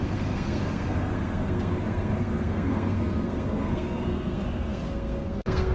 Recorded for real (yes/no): no